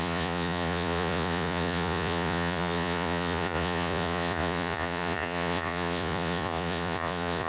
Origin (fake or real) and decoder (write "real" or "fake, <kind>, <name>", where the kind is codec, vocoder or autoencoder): fake, vocoder, Vocos